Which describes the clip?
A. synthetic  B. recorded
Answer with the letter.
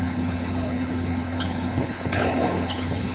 A